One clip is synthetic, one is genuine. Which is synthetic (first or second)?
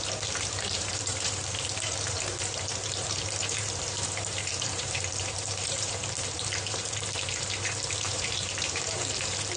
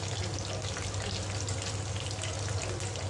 first